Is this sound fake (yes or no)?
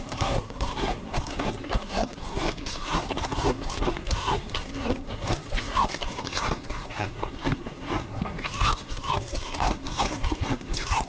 yes